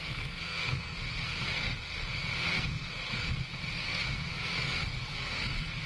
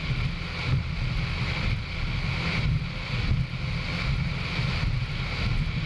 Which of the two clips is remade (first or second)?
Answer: first